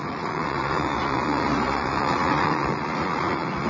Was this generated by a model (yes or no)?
yes